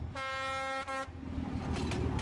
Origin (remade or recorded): recorded